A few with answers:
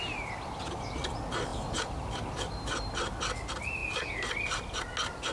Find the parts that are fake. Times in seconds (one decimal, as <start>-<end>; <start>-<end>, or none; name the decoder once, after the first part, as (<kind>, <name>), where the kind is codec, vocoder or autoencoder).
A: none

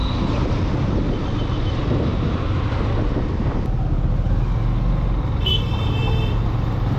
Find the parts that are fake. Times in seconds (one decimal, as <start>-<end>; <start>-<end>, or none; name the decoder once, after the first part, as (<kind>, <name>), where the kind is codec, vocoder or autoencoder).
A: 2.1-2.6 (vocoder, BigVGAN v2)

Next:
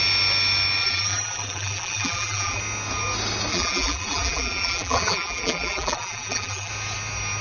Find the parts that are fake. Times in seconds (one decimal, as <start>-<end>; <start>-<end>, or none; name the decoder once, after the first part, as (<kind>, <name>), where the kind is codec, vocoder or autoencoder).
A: 0.8-2.6 (vocoder, BigVGAN v2); 3.5-6.7

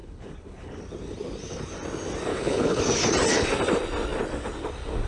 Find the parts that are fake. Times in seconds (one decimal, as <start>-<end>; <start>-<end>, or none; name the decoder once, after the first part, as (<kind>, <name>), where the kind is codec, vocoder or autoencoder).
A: 0.0-0.8 (codec, HILCodec); 2.3-2.8

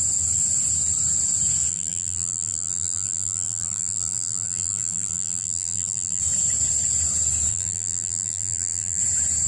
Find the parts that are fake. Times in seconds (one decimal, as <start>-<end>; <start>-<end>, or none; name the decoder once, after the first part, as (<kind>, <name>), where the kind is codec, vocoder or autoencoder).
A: 1.7-6.2 (vocoder, BigVGAN v2); 7.5-9.0